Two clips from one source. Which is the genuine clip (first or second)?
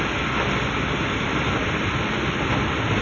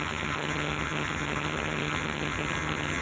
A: first